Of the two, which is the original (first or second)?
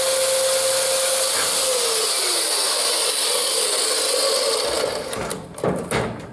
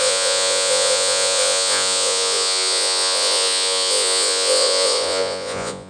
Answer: first